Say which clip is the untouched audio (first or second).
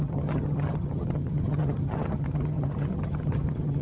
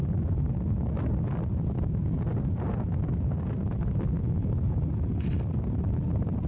second